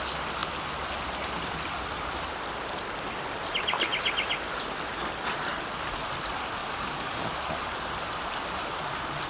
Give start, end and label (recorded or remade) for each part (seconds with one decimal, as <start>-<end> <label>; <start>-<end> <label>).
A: 0.0-6.6 recorded; 6.6-7.5 remade; 7.5-9.3 recorded